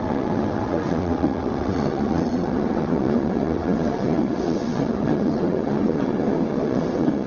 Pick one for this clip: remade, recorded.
remade